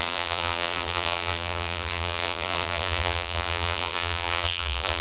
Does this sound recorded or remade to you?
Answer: remade